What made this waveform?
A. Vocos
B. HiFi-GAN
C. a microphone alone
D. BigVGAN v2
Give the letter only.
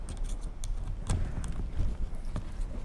C